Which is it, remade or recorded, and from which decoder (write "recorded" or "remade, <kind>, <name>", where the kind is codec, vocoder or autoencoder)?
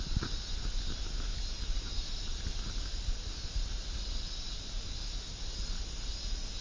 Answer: recorded